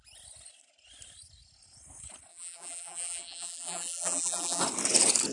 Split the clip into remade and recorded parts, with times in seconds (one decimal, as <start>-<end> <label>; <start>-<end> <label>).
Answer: 0.0-2.3 recorded; 2.3-4.6 remade; 4.6-5.3 recorded